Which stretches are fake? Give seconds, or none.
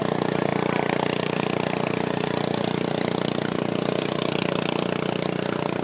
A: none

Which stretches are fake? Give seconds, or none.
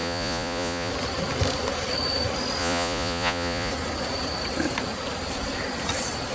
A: 0.0-0.9 (vocoder, Vocos); 2.6-3.7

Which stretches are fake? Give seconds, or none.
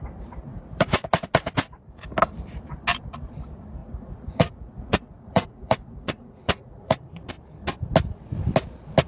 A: 0.5-1.1 (vocoder, Vocos); 3.8-7.3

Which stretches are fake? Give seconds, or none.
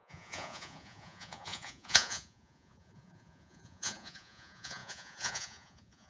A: 0.0-6.1 (vocoder, Vocos)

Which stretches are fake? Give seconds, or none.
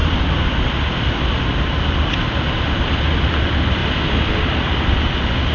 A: none